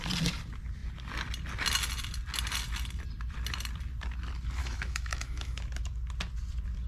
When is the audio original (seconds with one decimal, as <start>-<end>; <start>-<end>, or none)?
0.0-4.6; 5.6-6.9